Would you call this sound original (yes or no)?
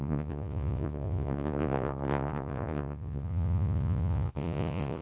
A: no